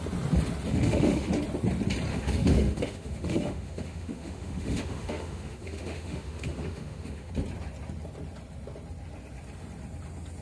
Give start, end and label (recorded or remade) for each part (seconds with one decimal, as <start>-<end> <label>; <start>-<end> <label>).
0.0-0.7 recorded; 0.7-1.3 remade; 1.3-2.1 recorded; 2.1-7.3 remade; 7.3-10.4 recorded